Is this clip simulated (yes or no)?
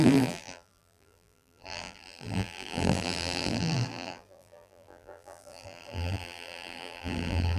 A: yes